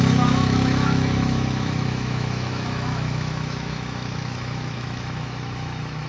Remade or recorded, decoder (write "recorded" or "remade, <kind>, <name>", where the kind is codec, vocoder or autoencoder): remade, autoencoder, DAC-VAE